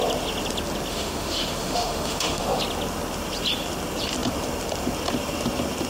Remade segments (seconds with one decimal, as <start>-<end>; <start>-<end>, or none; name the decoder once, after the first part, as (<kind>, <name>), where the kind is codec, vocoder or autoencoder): 0.9-2.6 (autoencoder, DAC-VAE)